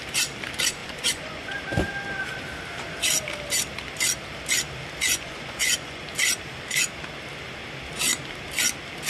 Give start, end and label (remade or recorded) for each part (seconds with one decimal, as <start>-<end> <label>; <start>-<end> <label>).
0.0-0.8 recorded; 0.8-1.6 remade; 1.6-5.1 recorded; 5.1-6.0 remade; 6.0-9.1 recorded